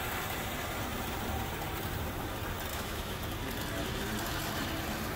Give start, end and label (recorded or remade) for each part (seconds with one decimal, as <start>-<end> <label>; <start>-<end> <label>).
0.0-2.7 recorded; 2.7-3.2 remade; 3.2-5.2 recorded